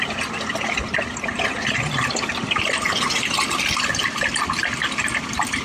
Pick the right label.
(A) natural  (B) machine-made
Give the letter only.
B